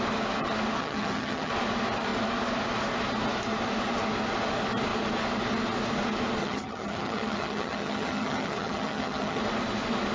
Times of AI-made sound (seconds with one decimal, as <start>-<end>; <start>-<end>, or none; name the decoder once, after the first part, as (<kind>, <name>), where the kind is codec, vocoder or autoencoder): 0.8-1.5 (vocoder, HiFi-GAN); 6.4-9.4